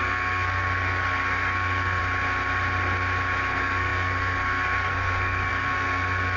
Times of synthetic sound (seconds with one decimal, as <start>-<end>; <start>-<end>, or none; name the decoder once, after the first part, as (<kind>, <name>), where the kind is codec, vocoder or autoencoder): 0.0-2.0 (codec, SNAC); 3.5-6.4